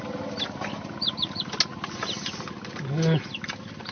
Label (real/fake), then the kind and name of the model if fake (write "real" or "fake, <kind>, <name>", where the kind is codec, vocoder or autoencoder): real